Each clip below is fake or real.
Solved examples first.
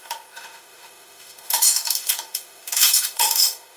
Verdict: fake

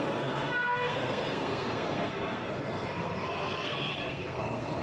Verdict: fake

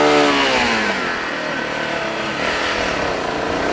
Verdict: real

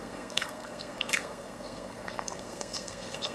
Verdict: fake